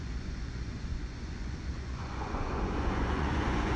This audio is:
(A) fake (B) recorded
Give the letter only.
A